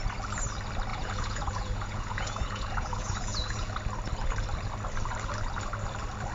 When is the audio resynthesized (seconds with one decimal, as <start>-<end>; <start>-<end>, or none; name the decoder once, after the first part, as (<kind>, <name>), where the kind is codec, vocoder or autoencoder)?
0.9-3.7 (vocoder, Vocos)